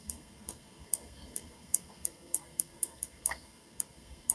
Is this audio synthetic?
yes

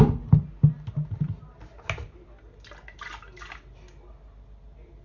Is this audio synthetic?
no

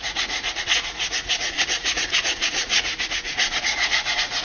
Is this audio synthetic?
yes